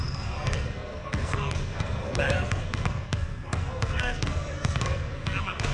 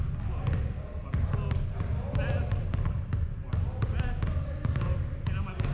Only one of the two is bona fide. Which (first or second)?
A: second